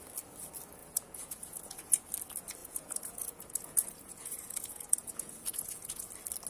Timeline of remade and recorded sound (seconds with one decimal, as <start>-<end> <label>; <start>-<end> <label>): 0.0-0.8 recorded; 0.8-2.1 remade; 2.1-2.6 recorded; 2.6-6.1 remade; 6.1-6.5 recorded